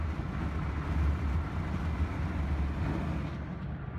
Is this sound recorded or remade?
recorded